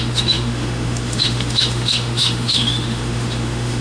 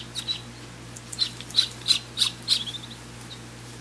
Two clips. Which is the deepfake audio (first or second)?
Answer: first